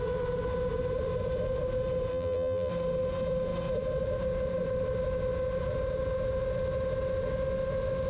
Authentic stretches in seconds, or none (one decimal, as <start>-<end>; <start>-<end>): 0.0-2.1; 2.7-8.1